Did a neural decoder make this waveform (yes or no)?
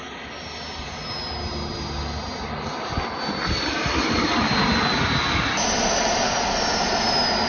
no